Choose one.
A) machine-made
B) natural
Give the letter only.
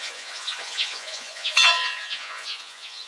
A